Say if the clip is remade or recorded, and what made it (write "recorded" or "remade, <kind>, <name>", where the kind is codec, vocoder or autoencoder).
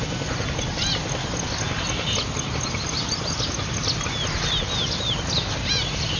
recorded